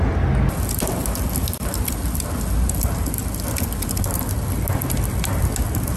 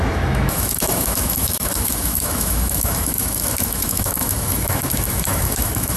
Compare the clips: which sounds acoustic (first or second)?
first